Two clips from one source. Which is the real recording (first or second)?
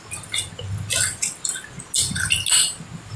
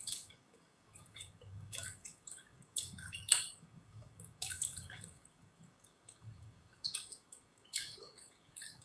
first